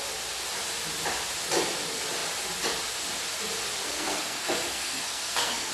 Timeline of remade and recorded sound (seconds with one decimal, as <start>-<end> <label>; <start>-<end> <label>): 0.0-3.8 recorded; 3.8-5.7 remade